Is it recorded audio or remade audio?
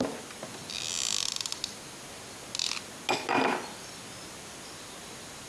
recorded